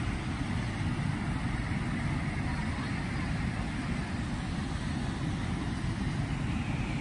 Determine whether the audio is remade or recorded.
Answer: recorded